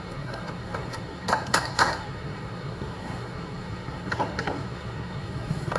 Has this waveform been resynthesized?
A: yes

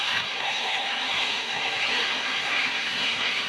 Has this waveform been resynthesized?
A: yes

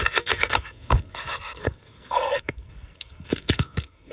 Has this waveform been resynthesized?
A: yes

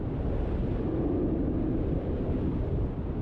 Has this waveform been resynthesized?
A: no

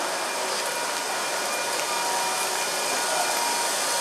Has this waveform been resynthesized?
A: no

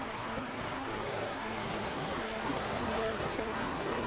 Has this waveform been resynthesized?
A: yes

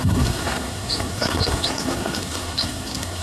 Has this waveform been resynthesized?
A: yes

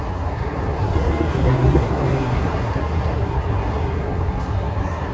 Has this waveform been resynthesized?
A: yes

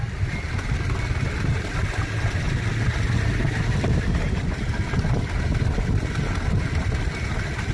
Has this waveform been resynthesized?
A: no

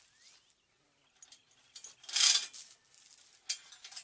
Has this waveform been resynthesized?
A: no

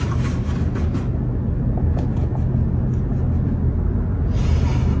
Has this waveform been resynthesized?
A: no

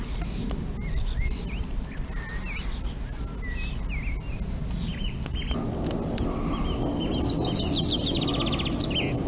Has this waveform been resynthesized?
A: no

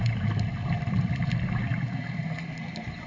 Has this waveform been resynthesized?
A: no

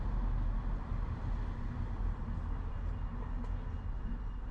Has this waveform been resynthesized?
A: no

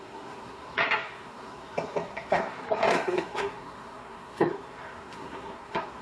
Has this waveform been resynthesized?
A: yes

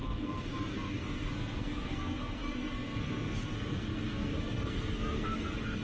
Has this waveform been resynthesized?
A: yes